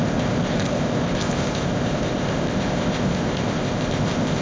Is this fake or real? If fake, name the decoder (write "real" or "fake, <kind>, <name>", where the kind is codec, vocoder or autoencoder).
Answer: fake, codec, ZipCodec